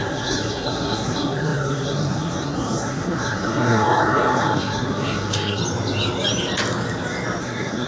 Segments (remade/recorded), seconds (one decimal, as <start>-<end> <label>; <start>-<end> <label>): 0.0-5.6 remade; 5.6-7.4 recorded; 7.4-7.9 remade